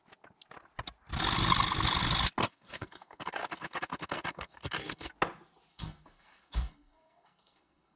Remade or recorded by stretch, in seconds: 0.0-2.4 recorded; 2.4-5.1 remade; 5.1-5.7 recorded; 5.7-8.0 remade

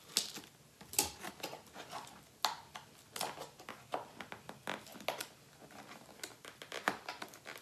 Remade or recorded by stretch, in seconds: 0.0-7.6 recorded

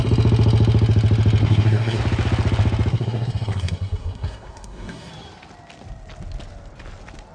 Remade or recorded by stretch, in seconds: 0.0-1.4 recorded; 1.4-2.0 remade; 2.0-2.9 recorded; 2.9-5.1 remade; 5.1-7.3 recorded

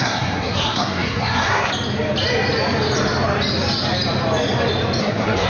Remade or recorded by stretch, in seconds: 0.0-1.7 remade; 1.7-5.0 recorded; 5.0-5.5 remade